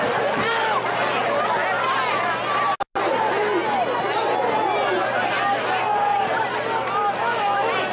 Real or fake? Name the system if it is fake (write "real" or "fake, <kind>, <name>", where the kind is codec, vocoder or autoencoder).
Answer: real